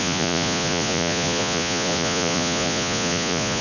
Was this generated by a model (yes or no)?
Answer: yes